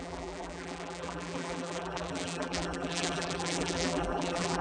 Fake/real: fake